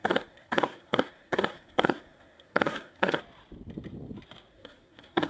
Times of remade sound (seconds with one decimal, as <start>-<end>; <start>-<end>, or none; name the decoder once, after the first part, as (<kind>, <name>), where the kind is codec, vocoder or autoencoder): 0.0-3.2 (codec, SNAC); 4.5-5.3